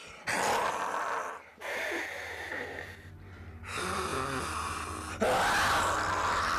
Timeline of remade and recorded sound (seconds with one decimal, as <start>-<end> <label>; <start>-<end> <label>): 0.0-6.6 recorded